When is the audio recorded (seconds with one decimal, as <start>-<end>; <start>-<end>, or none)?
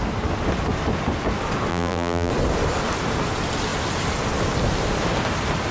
0.0-1.7; 2.3-5.7